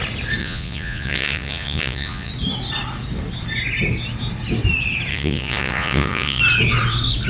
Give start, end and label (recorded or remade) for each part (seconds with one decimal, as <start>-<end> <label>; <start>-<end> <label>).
0.0-0.4 recorded; 0.4-2.3 remade; 2.3-5.1 recorded; 5.1-6.4 remade; 6.4-7.3 recorded